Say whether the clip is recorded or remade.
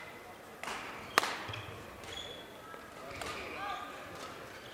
recorded